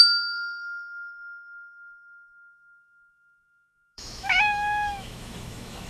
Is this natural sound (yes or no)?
no